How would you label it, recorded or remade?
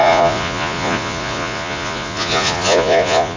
remade